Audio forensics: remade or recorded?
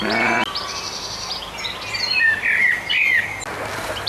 recorded